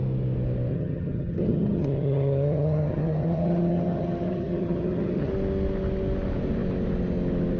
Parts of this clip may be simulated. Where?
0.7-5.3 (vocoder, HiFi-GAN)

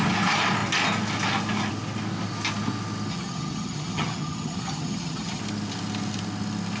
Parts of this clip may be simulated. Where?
3.1-5.4 (vocoder, HiFi-GAN)

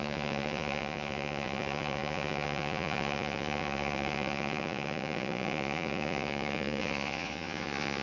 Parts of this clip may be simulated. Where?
0.0-8.0 (vocoder, Vocos)

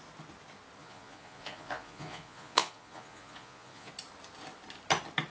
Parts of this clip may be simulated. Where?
0.8-3.9 (vocoder, Vocos)

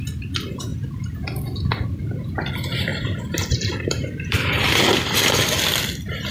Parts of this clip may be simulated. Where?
2.9-4.8 (vocoder, BigVGAN v2)